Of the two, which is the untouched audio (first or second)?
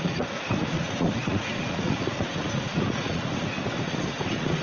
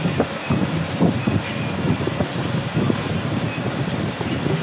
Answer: second